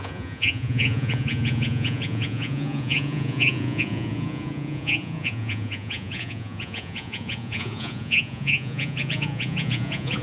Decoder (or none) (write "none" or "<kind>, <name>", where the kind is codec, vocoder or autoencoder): vocoder, Vocos